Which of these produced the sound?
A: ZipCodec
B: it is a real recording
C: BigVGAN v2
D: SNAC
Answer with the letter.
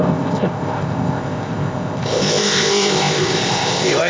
A